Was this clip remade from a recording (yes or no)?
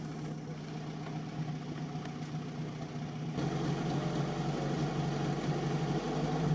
no